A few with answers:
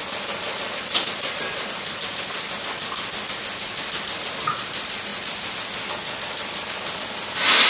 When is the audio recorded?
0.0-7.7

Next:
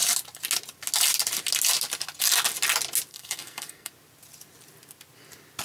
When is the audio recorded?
0.0-3.1; 3.9-5.6